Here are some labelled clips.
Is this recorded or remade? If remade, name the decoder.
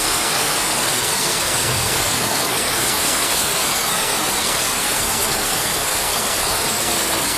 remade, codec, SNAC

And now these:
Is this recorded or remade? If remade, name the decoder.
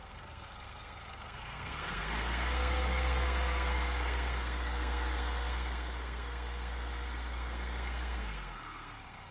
remade, codec, SNAC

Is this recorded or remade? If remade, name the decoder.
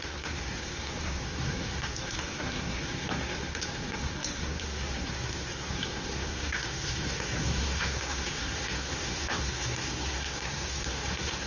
remade, codec, SNAC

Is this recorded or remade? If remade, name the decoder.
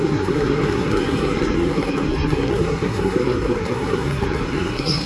remade, codec, SNAC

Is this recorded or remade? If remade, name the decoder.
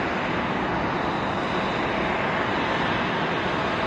recorded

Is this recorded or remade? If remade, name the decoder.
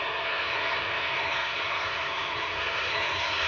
remade, codec, SNAC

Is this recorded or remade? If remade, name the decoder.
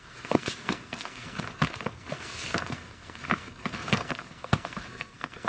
remade, codec, SNAC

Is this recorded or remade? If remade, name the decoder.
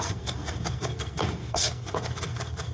remade, codec, SNAC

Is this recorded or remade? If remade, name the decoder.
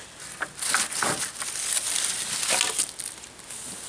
recorded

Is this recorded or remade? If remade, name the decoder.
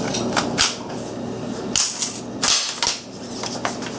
recorded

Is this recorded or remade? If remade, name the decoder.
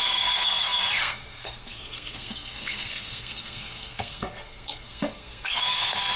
remade, codec, SNAC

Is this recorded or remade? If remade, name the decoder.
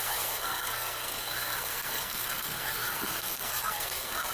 remade, codec, SNAC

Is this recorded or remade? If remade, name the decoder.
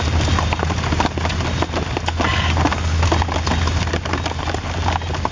recorded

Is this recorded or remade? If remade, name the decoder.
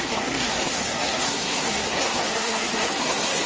remade, codec, SNAC